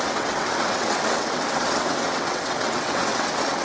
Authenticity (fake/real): fake